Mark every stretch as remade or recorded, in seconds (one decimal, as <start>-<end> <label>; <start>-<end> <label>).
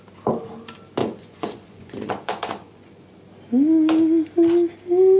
0.0-1.0 recorded; 1.0-3.2 remade; 3.2-5.2 recorded